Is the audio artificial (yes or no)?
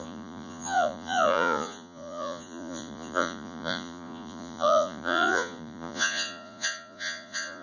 yes